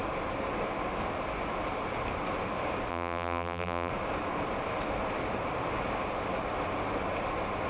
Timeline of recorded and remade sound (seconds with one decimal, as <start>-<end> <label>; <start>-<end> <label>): 0.0-2.9 recorded; 2.9-3.9 remade; 3.9-7.7 recorded